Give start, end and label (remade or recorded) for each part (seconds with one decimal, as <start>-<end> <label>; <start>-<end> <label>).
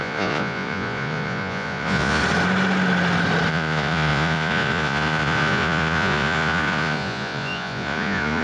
0.0-2.2 remade; 2.2-3.5 recorded; 3.5-8.4 remade